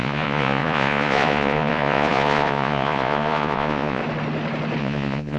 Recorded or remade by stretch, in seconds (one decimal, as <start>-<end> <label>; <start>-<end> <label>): 0.0-4.0 remade; 4.0-4.8 recorded; 4.8-5.4 remade

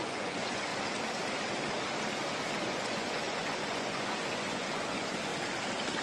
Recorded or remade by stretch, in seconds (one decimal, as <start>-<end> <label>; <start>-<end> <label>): 0.0-0.7 remade; 0.7-2.6 recorded; 2.6-5.3 remade; 5.3-6.0 recorded

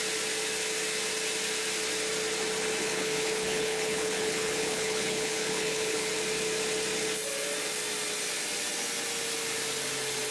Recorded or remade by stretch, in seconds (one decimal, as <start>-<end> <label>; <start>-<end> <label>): 0.0-2.8 recorded; 2.8-6.1 remade; 6.1-10.3 recorded

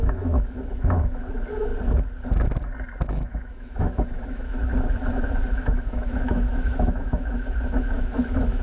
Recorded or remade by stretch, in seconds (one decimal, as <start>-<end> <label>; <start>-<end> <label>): 0.0-1.7 remade; 1.7-3.1 recorded; 3.1-4.7 remade; 4.7-5.5 recorded; 5.5-8.6 remade